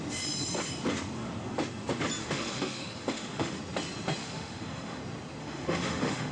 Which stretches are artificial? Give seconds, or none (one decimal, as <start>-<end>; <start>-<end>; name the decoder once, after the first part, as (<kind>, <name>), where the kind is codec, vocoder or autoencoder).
2.2-3.6 (autoencoder, DAC-VAE); 4.2-5.0; 5.4-6.3